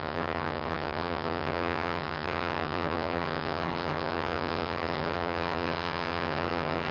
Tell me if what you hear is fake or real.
fake